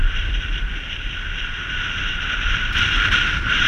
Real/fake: fake